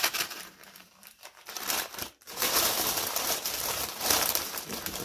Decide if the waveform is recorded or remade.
remade